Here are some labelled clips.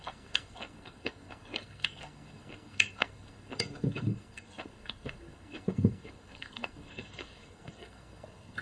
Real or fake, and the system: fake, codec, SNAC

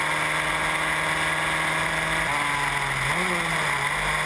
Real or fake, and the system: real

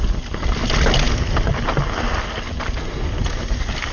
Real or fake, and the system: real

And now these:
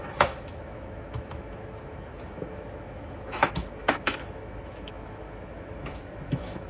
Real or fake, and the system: fake, autoencoder, DAC-VAE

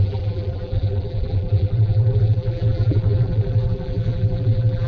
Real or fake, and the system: fake, vocoder, BigVGAN v2